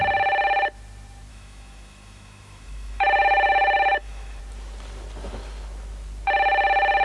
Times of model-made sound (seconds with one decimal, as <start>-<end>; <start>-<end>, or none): 1.3-4.4